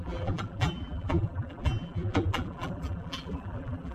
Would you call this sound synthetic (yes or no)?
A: yes